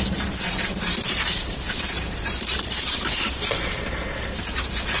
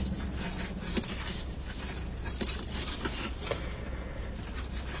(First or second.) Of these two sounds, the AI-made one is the first